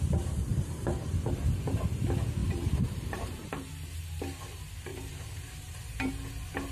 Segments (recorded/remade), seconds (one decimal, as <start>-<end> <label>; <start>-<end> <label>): 0.0-0.5 recorded; 0.5-1.5 remade; 1.5-2.4 recorded; 2.4-3.7 remade; 3.7-4.9 recorded; 4.9-6.1 remade; 6.1-6.7 recorded